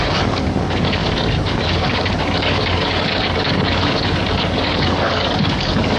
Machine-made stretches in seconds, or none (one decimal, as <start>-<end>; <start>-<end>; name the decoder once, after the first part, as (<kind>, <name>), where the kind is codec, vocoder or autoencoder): 0.0-6.0 (codec, DAC)